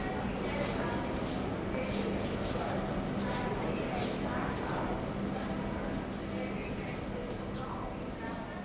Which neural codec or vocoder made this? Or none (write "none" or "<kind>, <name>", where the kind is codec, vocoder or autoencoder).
none